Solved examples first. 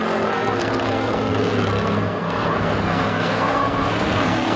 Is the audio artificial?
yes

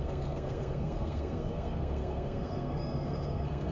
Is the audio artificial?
yes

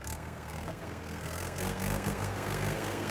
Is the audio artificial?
yes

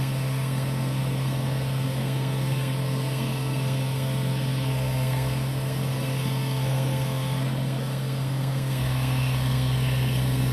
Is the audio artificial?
yes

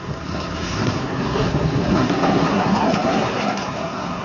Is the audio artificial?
yes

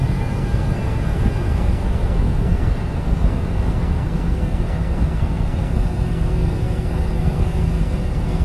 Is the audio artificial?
yes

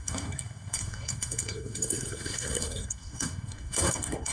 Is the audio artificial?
yes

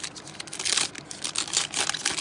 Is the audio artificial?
no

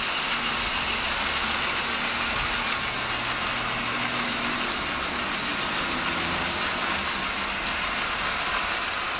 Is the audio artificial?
no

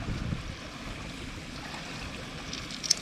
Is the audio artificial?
no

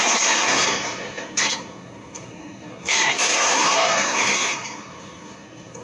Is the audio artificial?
yes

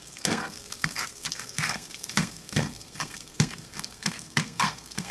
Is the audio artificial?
yes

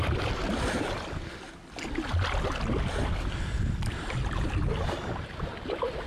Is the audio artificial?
no